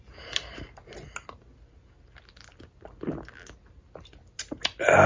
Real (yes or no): yes